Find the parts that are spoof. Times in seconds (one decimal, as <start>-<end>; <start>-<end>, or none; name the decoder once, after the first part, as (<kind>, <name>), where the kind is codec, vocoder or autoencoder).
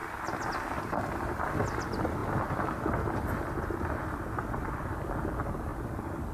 none